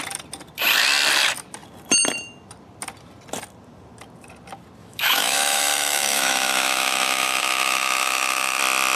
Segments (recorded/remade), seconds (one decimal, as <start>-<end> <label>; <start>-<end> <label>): 0.0-4.8 recorded; 4.8-8.6 remade; 8.6-9.0 recorded